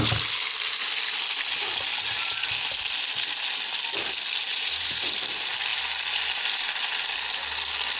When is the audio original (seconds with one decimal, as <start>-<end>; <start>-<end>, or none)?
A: 0.0-4.5; 5.1-8.0